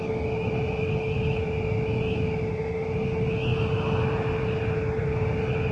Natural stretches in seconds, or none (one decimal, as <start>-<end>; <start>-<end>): 0.0-5.7